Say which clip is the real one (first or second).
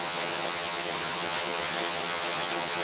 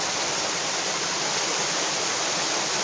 second